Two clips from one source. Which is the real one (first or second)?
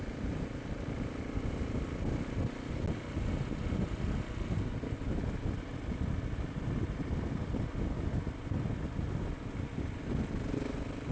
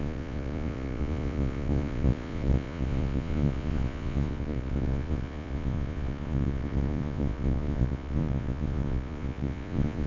first